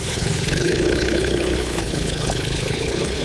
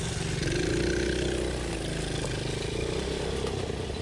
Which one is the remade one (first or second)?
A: first